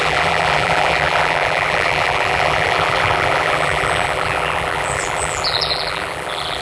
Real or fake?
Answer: fake